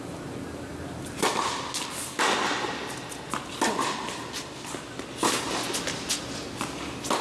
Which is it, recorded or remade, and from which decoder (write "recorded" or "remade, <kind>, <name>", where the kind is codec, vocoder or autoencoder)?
recorded